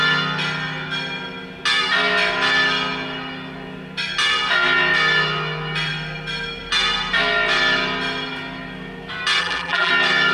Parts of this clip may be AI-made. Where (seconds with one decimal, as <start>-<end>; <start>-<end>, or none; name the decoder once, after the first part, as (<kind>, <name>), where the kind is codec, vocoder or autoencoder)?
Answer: 9.4-9.9 (vocoder, BigVGAN v2)